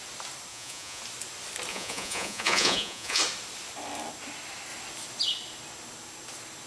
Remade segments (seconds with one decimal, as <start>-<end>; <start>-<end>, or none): 0.5-1.0; 1.7-3.2